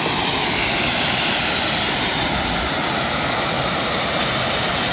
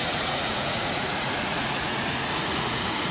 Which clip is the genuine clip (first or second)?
first